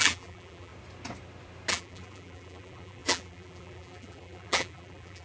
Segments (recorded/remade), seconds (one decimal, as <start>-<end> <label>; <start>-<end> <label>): 0.0-0.7 remade; 0.7-1.7 recorded; 1.7-5.2 remade